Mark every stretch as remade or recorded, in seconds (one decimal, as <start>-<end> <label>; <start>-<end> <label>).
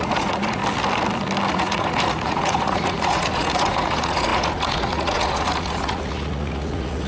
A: 0.0-0.6 remade; 0.6-1.5 recorded; 1.5-7.1 remade